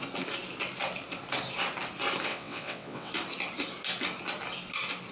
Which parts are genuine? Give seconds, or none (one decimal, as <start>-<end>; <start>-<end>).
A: 0.0-2.3; 3.1-5.1